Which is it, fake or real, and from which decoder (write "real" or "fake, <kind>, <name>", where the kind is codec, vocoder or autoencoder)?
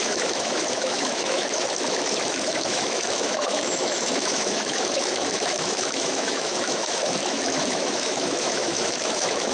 fake, autoencoder, DAC-VAE